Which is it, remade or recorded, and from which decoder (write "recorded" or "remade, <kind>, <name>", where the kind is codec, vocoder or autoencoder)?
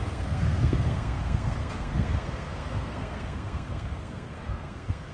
remade, codec, SNAC